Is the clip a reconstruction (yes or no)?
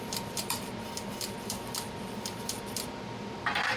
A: yes